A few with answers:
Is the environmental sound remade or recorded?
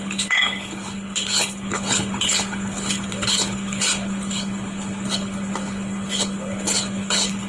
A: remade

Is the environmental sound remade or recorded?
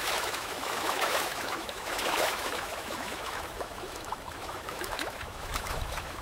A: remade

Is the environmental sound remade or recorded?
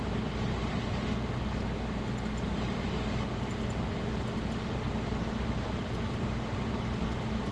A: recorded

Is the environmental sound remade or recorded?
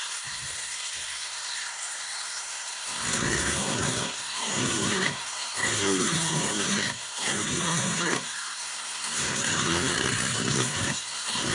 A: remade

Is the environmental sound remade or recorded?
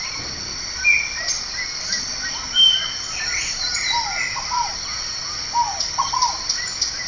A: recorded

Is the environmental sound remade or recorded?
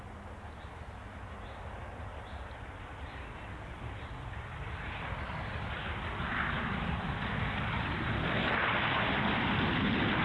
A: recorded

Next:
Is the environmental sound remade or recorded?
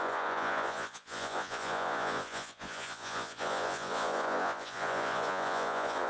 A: remade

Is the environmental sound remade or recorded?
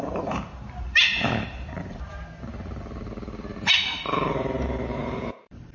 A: remade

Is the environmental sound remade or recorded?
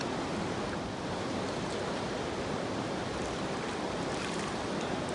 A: recorded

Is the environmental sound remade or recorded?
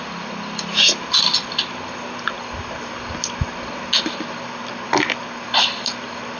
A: recorded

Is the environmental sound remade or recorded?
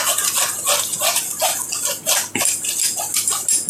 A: recorded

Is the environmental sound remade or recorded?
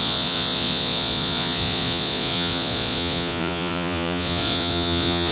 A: remade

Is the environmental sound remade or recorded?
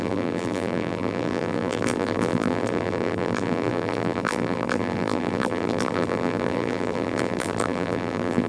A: remade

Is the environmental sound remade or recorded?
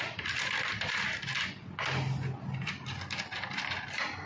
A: recorded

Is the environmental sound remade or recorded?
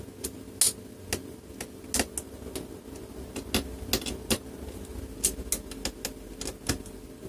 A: recorded